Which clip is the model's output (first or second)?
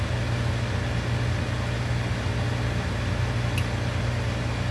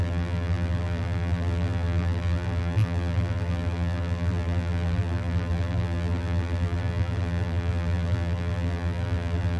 second